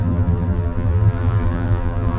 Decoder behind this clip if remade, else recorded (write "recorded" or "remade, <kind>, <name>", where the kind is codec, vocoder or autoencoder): remade, vocoder, BigVGAN v2